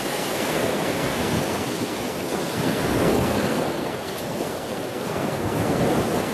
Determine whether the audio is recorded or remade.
remade